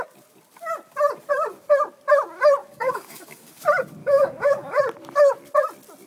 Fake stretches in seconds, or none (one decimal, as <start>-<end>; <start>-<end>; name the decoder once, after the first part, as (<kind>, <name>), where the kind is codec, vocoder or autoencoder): 2.6-3.6 (codec, DAC); 4.0-4.8